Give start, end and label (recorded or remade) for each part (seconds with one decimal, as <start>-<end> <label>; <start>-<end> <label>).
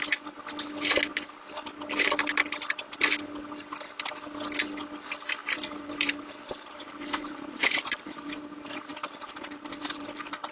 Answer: 0.0-5.4 recorded; 5.4-10.5 remade